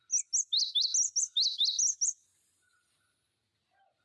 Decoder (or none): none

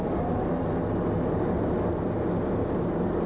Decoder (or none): none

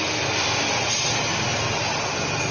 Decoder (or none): none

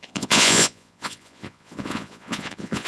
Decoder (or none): vocoder, Vocos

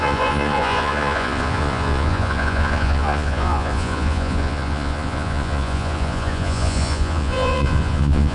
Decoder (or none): vocoder, Vocos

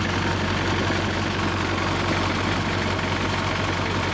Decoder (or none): none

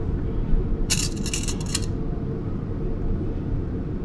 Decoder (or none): none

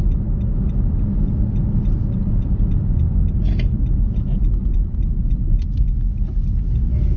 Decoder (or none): none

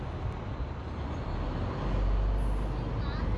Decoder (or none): none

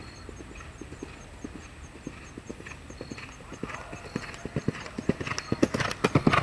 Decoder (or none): none